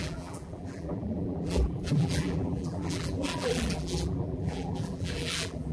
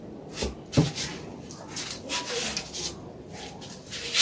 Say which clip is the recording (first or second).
second